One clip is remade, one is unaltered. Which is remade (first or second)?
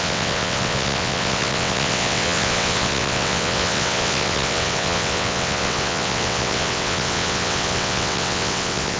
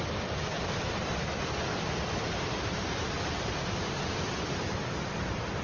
first